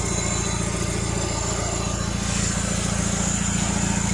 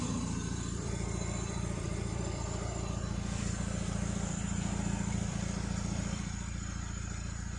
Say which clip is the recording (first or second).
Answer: first